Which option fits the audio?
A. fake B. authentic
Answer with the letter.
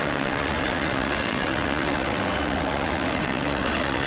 A